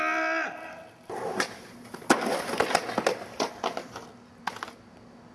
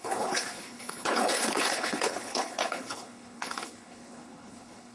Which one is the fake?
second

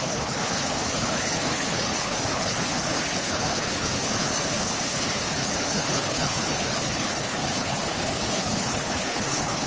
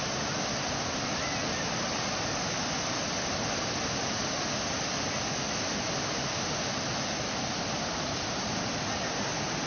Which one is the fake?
first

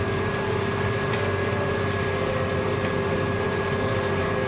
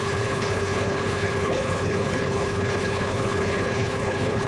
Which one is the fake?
second